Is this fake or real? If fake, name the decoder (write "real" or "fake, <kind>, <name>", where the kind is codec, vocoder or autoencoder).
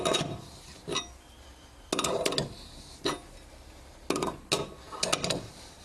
real